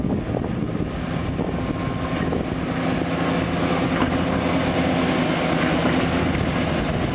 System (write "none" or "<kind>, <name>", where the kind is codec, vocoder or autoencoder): none